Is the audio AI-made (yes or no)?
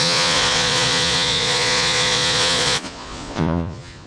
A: yes